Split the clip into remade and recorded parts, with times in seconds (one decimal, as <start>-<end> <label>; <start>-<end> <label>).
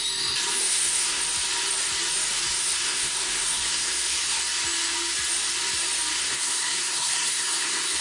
0.0-0.6 recorded; 0.6-1.2 remade; 1.2-2.5 recorded; 2.5-4.4 remade; 4.4-6.2 recorded; 6.2-8.0 remade